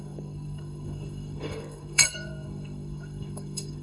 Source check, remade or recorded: remade